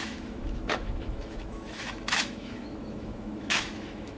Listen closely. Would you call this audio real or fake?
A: fake